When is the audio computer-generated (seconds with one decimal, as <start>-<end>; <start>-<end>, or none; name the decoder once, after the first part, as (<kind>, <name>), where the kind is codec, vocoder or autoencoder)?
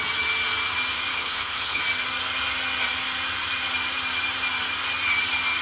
1.1-1.8 (codec, HILCodec)